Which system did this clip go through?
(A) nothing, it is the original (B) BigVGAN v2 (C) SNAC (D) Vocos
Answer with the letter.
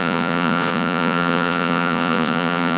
D